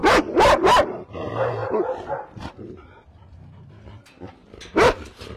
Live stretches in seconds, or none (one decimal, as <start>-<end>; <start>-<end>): 0.0-4.4